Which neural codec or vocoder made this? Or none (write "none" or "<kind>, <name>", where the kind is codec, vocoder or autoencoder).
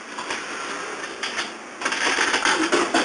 none